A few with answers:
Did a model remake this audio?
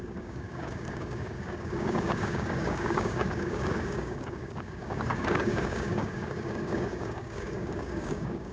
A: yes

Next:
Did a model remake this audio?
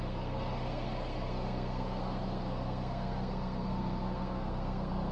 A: yes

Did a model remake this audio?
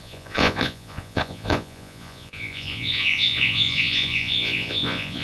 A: yes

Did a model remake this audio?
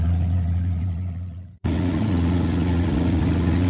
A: yes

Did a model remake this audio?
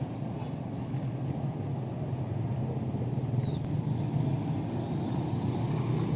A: no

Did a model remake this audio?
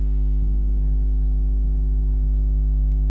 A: yes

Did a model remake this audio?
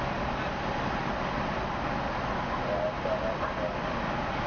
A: no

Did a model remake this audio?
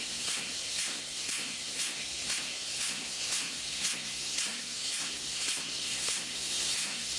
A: yes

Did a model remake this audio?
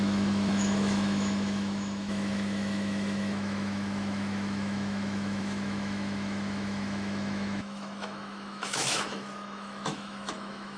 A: yes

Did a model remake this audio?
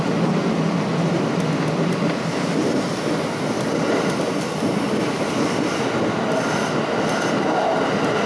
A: no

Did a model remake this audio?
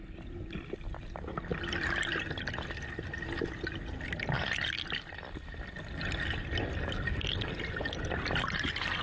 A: no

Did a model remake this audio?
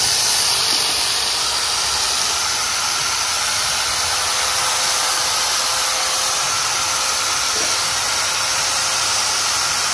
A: no